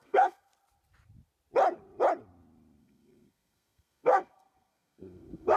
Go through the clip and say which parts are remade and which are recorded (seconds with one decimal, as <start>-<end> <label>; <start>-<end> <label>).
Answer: 0.0-0.5 remade; 0.5-2.8 recorded; 2.8-5.6 remade